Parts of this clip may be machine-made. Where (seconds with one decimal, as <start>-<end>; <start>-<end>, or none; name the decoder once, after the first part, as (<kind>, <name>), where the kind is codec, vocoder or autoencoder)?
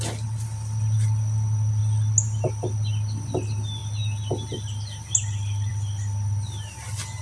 none